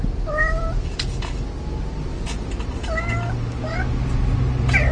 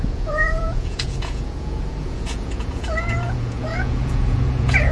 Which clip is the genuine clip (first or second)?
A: first